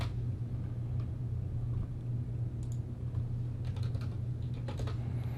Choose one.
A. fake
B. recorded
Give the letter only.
B